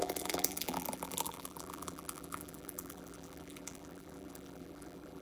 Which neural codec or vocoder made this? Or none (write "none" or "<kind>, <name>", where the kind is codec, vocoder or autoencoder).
vocoder, BigVGAN v2